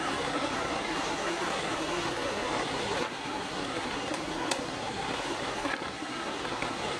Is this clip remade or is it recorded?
remade